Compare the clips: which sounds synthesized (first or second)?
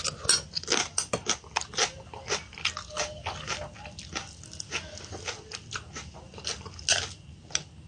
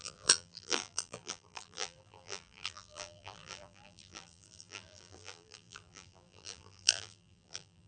second